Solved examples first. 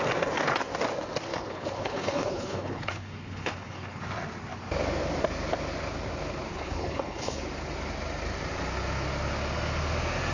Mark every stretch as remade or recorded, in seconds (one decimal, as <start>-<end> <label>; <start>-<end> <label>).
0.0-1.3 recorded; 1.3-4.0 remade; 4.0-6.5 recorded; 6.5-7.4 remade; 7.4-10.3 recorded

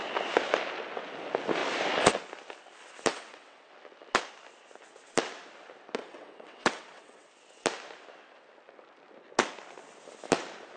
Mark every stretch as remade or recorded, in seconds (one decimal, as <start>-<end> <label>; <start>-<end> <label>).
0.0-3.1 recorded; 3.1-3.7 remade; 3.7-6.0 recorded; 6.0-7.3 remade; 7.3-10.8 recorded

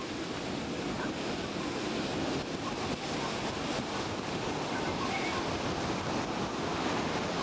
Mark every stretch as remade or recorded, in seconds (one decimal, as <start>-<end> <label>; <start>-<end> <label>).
0.0-7.4 recorded